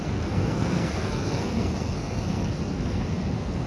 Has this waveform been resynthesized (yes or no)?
yes